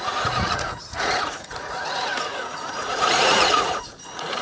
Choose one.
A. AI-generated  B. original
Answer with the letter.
A